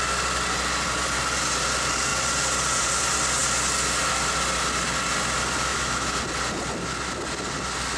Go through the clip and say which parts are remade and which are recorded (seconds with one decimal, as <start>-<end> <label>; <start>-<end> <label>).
0.0-5.7 recorded; 5.7-6.2 remade; 6.2-8.0 recorded